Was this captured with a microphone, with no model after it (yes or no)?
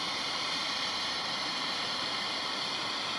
no